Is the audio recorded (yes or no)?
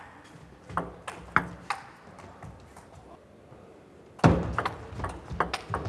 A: yes